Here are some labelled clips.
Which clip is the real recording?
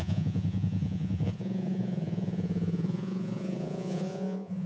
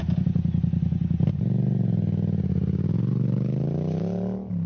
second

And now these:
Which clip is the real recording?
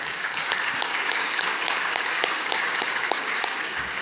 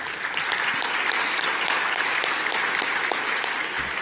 second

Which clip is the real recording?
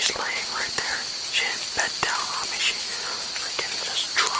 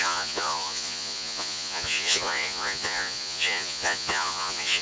first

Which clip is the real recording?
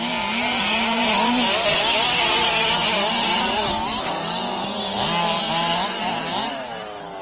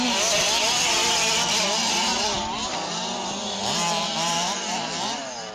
first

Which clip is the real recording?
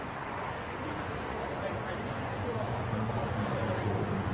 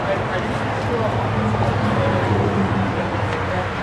second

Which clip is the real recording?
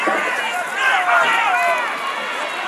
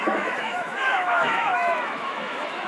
first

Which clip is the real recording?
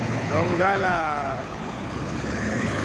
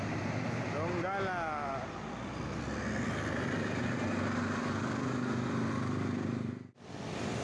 second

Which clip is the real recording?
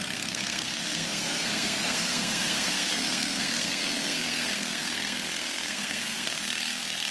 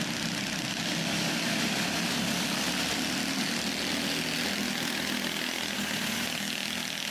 second